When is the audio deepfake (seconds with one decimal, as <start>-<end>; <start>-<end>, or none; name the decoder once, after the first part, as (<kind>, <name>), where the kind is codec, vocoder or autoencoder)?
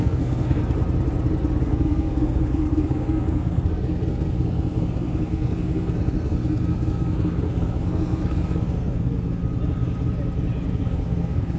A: 0.0-0.6 (codec, SNAC); 1.6-9.4; 10.7-11.6